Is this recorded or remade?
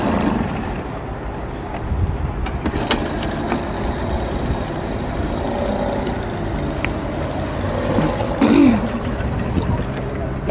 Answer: recorded